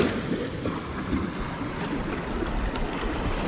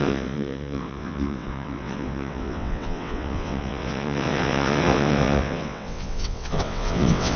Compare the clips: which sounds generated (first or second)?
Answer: second